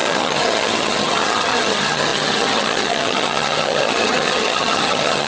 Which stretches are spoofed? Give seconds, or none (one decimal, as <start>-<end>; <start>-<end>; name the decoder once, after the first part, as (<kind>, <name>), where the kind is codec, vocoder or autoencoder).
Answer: 0.0-5.3 (vocoder, HiFi-GAN)